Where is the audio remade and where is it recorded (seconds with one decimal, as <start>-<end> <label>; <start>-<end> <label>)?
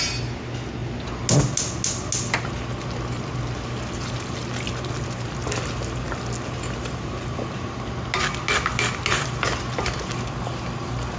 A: 0.0-11.2 recorded